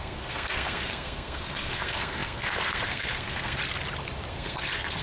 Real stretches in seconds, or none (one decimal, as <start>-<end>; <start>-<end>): 3.6-4.3